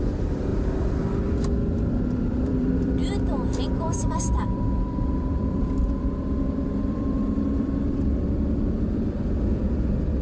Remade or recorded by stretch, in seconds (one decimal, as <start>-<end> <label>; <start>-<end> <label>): 0.0-0.5 remade; 0.5-2.1 recorded; 2.1-3.0 remade; 3.0-3.7 recorded; 3.7-10.2 remade